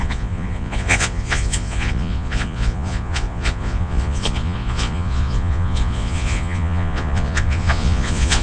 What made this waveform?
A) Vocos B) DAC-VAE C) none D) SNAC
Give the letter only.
A